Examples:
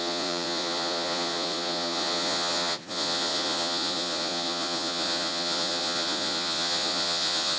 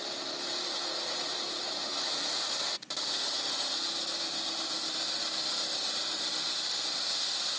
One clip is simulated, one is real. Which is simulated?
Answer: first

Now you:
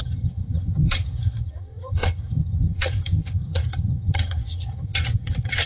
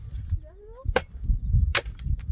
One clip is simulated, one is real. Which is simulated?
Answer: first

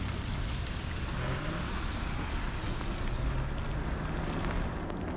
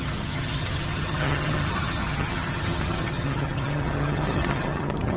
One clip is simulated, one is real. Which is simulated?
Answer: second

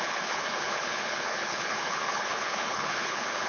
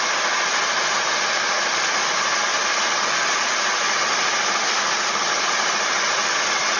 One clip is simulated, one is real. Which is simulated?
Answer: first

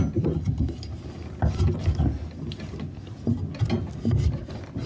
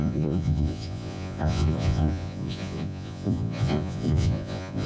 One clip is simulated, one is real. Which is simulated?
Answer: second